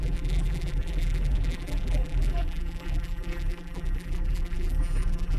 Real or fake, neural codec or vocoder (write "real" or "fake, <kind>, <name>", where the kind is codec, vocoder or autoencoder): fake, vocoder, BigVGAN v2